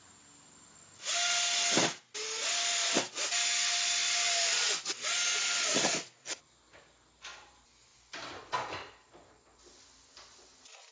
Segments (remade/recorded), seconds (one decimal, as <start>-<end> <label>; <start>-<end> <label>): 0.0-5.7 recorded; 5.7-6.4 remade; 6.4-10.9 recorded